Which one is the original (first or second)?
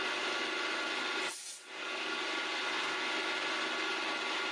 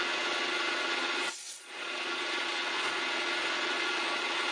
first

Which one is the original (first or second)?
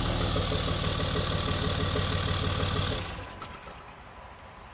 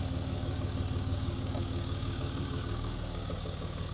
first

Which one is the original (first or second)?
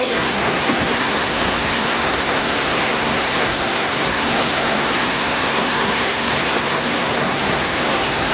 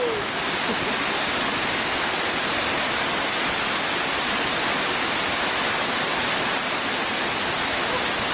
second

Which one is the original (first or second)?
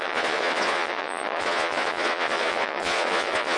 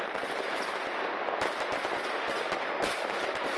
second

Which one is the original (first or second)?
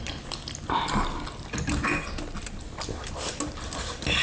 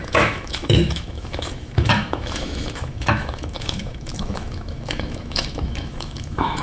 first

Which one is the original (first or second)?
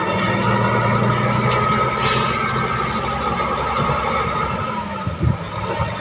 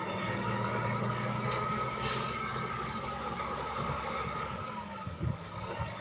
first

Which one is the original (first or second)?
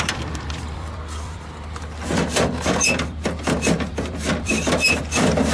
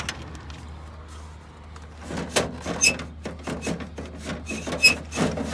second